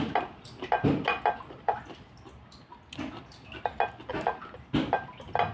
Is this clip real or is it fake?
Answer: real